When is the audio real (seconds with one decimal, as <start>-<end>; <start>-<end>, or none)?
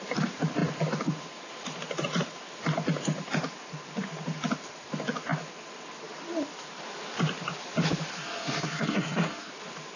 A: 0.0-8.1; 9.5-10.0